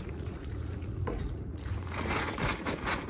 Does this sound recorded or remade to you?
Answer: remade